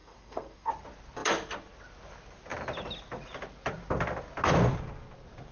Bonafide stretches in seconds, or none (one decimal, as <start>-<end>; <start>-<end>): 0.7-5.5